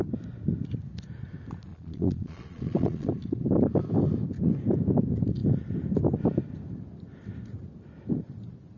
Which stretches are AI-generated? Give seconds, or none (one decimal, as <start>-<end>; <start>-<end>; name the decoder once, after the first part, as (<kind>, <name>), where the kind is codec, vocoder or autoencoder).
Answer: 1.7-3.1 (vocoder, Vocos)